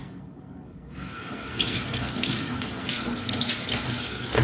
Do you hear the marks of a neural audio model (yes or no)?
yes